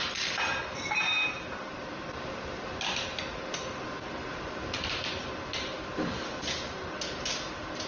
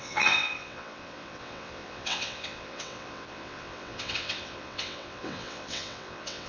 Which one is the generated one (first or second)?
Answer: second